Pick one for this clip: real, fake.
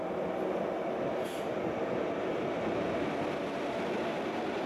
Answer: real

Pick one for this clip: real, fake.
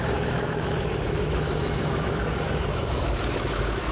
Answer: fake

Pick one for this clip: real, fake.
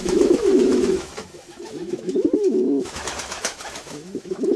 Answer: fake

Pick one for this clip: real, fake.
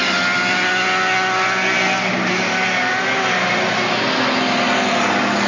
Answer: real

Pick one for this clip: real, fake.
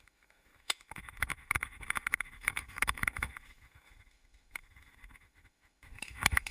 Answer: fake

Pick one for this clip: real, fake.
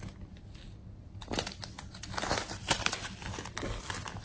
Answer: real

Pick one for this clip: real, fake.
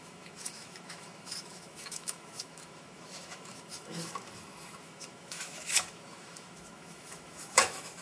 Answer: fake